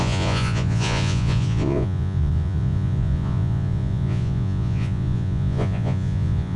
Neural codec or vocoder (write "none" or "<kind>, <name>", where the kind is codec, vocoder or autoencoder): vocoder, Vocos